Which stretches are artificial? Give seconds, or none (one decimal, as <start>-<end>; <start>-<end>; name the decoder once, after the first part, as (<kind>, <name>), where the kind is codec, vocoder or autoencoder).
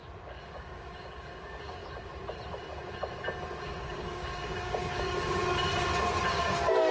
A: 0.0-1.8 (codec, DAC); 3.6-5.4; 6.3-6.9